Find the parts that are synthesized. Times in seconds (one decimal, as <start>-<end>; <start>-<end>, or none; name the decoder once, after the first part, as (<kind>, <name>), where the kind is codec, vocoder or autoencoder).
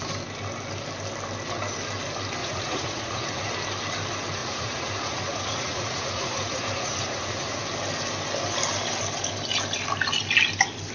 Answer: 2.4-3.5 (vocoder, Vocos); 4.4-7.6